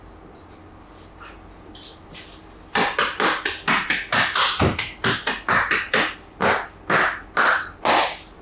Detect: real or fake real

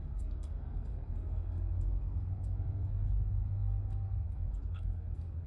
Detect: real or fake fake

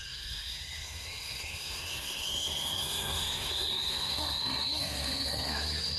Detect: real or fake fake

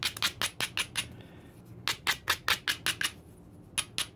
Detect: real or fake real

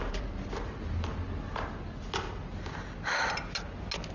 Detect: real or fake real